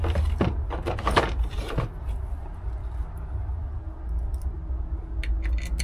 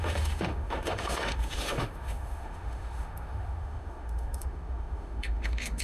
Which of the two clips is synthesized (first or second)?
second